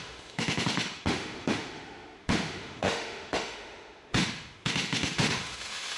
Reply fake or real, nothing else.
fake